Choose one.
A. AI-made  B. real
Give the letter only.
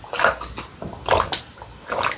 B